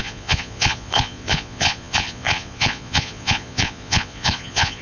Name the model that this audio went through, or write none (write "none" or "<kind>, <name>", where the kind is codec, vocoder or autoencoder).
vocoder, Vocos